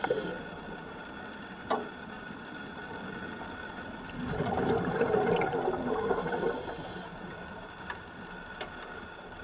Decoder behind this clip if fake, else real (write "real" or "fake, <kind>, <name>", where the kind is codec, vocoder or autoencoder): real